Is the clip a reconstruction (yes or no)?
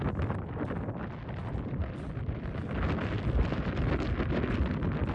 no